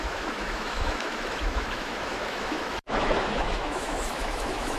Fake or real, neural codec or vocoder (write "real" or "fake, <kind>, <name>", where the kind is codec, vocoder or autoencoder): fake, autoencoder, DAC-VAE